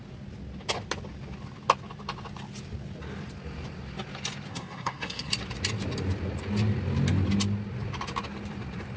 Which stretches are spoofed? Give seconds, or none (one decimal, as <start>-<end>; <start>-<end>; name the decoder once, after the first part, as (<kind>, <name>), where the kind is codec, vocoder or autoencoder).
4.5-5.3 (codec, SNAC)

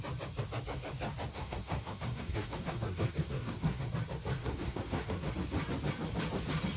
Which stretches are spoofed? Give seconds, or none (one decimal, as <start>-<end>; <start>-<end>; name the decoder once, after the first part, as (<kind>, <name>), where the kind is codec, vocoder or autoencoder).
1.3-3.9 (codec, SNAC); 4.4-5.3

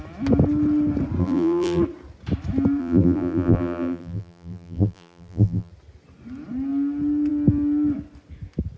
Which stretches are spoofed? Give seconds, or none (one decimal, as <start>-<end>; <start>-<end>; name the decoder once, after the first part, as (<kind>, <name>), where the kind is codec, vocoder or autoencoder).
1.2-1.8 (vocoder, BigVGAN v2); 2.8-5.7

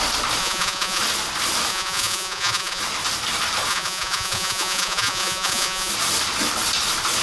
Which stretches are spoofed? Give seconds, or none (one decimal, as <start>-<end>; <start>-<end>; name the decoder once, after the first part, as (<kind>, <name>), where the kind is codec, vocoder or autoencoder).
0.4-1.0 (vocoder, Vocos); 1.7-2.8; 3.7-5.9

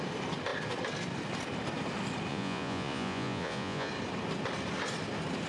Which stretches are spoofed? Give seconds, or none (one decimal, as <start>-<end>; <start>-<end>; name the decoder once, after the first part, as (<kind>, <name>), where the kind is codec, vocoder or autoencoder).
2.3-3.9 (vocoder, Vocos)